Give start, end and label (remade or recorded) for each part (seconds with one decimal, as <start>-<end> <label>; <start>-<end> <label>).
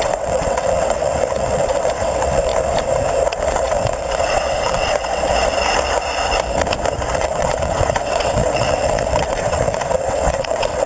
0.0-2.5 remade; 2.5-3.5 recorded; 3.5-5.3 remade; 5.3-7.1 recorded; 7.1-10.9 remade